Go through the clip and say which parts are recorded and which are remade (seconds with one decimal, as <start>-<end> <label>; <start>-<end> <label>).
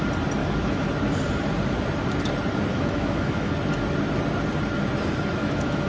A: 0.0-0.4 recorded; 0.4-0.9 remade; 0.9-2.7 recorded; 2.7-3.5 remade; 3.5-5.4 recorded; 5.4-5.9 remade